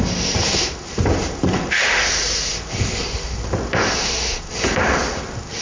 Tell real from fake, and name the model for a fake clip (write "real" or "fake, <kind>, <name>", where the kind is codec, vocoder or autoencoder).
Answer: real